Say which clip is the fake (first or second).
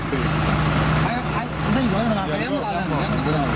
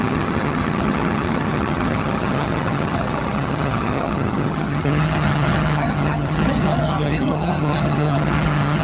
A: second